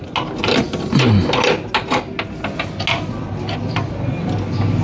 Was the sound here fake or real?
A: real